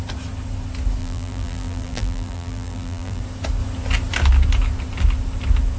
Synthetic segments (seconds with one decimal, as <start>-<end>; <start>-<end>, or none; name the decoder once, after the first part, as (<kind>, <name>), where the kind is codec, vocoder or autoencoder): 1.0-3.2 (vocoder, BigVGAN v2)